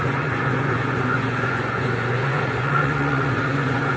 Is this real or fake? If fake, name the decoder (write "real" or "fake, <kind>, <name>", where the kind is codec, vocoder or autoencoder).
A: fake, vocoder, Vocos